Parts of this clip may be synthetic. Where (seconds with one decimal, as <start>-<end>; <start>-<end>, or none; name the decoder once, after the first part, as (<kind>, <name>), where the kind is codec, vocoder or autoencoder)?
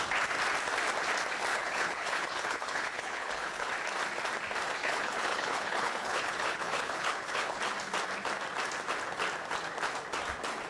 1.5-3.7 (codec, HILCodec); 4.8-7.6